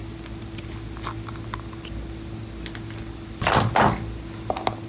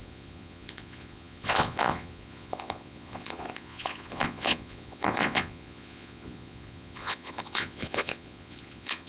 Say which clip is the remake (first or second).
second